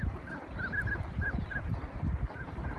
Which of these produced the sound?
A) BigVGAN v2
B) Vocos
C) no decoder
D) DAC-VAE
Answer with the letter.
C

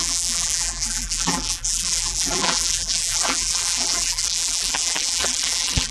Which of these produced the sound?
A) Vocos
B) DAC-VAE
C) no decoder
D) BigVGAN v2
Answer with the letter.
D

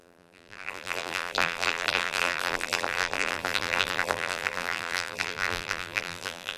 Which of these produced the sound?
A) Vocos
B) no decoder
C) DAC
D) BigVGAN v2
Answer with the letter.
D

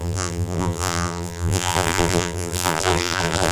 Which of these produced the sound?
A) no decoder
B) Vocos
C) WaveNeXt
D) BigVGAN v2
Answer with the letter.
D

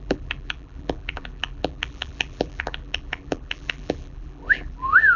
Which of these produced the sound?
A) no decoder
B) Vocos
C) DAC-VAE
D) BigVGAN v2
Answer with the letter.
D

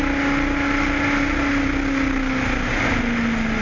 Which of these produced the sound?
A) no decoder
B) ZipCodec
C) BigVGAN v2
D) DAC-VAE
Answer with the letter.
A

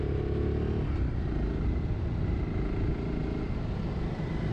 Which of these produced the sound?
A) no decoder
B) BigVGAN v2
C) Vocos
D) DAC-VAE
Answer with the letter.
A